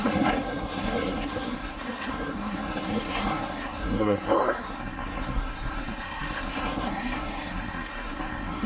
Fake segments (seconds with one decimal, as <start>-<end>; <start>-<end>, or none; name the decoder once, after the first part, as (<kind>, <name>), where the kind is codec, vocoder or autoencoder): 0.0-8.7 (codec, SNAC)